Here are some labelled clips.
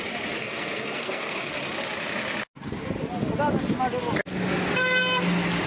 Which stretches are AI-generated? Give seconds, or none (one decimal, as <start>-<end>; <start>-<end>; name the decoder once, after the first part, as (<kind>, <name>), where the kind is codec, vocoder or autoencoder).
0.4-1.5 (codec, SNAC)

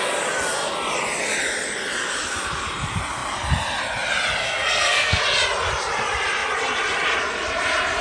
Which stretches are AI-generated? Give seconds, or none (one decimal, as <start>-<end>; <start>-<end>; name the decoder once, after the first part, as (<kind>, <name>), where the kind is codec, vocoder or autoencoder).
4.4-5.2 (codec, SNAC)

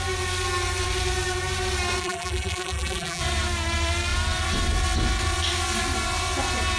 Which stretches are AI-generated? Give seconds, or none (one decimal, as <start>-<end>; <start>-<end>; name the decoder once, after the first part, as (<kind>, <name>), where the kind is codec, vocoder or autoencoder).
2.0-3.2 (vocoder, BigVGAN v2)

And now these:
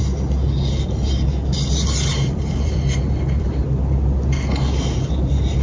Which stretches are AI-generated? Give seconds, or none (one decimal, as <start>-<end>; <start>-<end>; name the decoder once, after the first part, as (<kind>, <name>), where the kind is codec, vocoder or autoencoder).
2.1-3.6 (vocoder, BigVGAN v2); 4.7-5.6

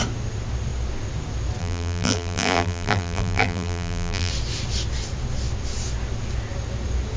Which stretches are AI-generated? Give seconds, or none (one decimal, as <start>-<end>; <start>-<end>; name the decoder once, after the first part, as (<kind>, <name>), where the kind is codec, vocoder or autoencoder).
1.6-4.3 (vocoder, BigVGAN v2)